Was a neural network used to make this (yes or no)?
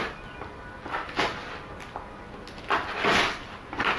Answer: no